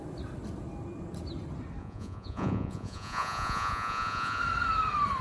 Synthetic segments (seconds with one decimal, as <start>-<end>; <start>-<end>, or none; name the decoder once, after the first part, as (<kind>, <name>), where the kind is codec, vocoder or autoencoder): 1.8-4.4 (vocoder, Vocos)